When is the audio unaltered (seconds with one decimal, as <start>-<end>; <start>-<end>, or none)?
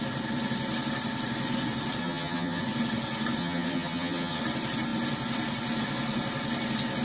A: 0.0-2.0; 2.6-3.4; 4.4-7.0